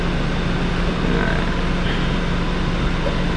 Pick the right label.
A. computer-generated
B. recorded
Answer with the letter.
B